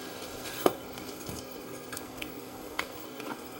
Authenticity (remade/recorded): remade